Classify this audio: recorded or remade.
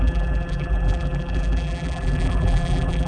remade